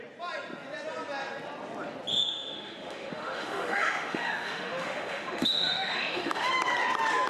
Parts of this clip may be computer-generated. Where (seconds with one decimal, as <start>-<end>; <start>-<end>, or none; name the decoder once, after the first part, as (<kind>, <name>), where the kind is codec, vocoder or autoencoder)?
2.1-6.5 (autoencoder, DAC-VAE)

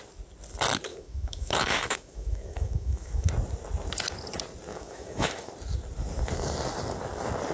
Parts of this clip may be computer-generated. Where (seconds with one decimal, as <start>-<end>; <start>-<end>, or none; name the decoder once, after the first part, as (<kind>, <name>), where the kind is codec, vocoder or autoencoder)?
0.9-3.3 (autoencoder, DAC-VAE); 4.7-5.5

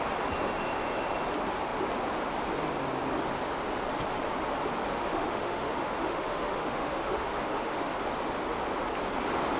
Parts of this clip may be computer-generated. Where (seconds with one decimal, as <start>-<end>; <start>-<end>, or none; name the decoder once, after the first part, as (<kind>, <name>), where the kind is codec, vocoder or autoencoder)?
4.9-7.9 (autoencoder, DAC-VAE)